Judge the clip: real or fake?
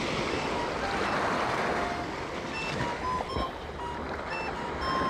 real